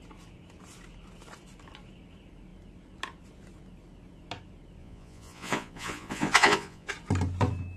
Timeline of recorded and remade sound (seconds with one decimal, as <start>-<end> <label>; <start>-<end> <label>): 0.0-4.8 recorded; 4.8-6.9 remade; 6.9-7.8 recorded